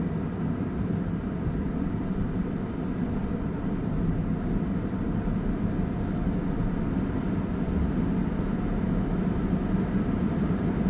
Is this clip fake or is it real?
real